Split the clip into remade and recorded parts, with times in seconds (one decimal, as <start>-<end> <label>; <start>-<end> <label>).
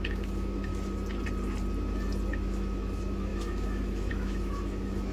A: 0.0-0.7 remade; 0.7-2.3 recorded; 2.3-5.1 remade